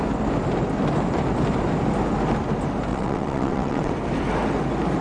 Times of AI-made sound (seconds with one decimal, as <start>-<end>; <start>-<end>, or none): 2.9-3.9